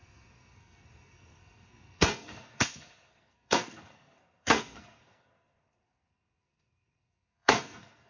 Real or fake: fake